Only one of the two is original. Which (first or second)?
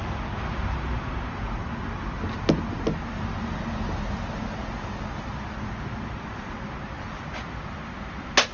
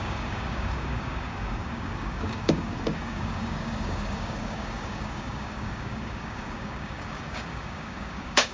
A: first